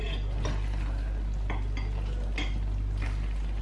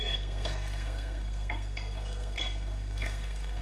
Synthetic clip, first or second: second